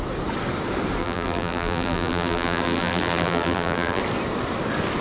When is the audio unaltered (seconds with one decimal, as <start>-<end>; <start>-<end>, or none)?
0.0-1.0; 4.0-5.0

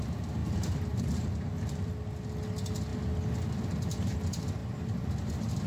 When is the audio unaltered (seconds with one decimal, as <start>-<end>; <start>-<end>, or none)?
0.0-0.4; 1.9-4.6; 5.3-5.7